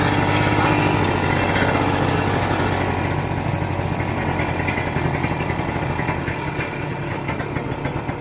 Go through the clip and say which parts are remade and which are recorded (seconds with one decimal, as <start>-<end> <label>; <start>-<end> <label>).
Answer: 0.0-8.2 recorded